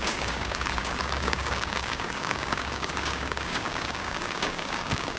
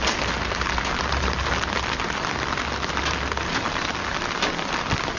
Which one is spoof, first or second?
first